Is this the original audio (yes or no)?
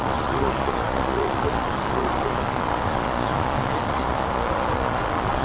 no